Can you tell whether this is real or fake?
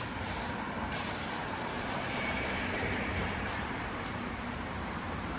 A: fake